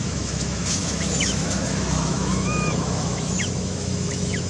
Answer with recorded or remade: remade